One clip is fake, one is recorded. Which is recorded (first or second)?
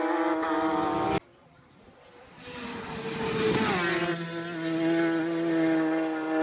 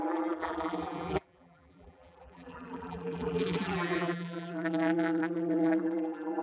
first